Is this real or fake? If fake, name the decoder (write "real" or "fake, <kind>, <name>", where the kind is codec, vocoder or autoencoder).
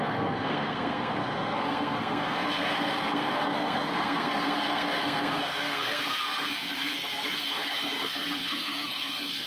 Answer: fake, codec, SNAC